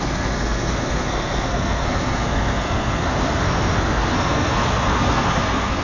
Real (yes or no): no